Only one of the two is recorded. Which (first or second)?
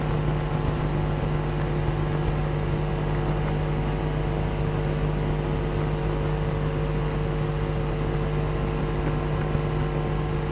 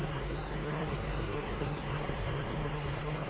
first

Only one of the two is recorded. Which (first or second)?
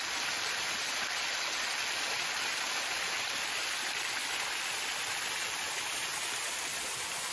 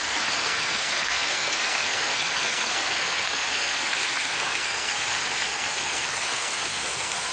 first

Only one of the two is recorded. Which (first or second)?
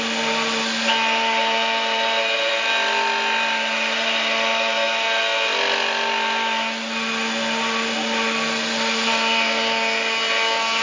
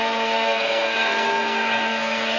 first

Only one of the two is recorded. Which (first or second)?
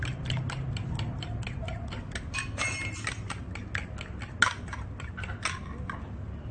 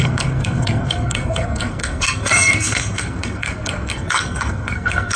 first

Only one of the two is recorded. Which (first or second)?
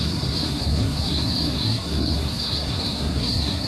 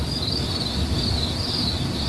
second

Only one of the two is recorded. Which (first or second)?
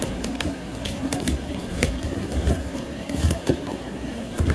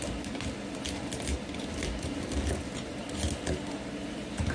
second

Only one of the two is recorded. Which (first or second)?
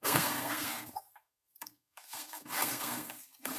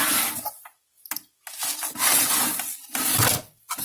second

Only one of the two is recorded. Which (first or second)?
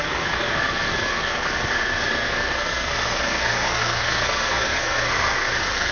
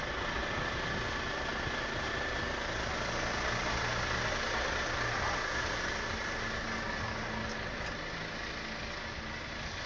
second